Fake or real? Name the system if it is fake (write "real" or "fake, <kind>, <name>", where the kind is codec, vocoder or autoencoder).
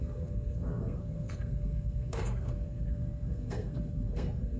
fake, codec, SNAC